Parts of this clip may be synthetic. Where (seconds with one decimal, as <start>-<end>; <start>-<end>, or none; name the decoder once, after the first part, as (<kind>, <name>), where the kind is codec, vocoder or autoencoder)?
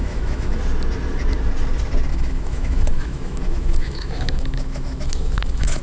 0.0-0.6 (autoencoder, DAC-VAE); 2.1-5.8